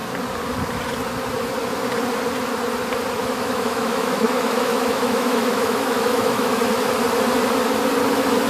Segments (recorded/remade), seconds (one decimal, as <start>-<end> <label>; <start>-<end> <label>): 0.0-3.2 recorded; 3.2-6.6 remade; 6.6-8.5 recorded